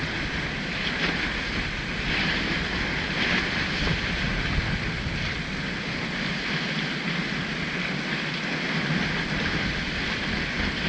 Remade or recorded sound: recorded